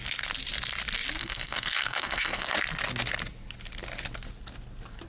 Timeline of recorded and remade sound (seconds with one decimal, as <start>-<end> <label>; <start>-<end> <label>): 0.0-1.2 recorded; 1.2-2.5 remade; 2.5-5.1 recorded